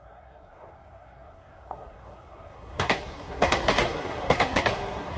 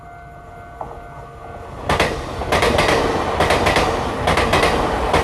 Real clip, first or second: second